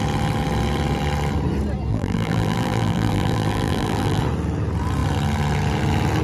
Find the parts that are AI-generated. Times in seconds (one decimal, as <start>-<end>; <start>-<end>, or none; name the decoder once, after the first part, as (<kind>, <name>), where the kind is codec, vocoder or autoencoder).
1.9-4.2 (vocoder, BigVGAN v2)